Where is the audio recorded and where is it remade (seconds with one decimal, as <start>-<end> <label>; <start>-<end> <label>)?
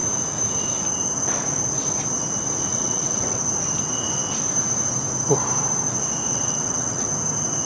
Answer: 0.0-2.7 recorded; 2.7-3.4 remade; 3.4-6.3 recorded; 6.3-7.1 remade; 7.1-7.7 recorded